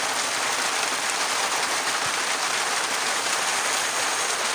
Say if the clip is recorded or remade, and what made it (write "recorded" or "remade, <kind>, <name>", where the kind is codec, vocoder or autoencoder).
recorded